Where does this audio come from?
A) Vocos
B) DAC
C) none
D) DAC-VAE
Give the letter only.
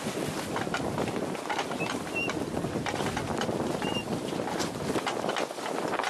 C